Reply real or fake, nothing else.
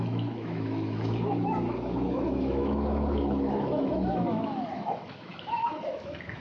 fake